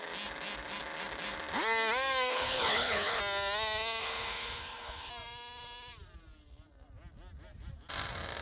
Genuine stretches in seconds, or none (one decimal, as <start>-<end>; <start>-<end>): 0.0-2.3; 3.2-4.0; 5.1-8.4